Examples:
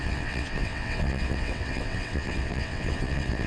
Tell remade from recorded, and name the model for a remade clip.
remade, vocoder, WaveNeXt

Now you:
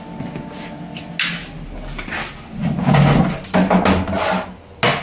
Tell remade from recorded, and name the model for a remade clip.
recorded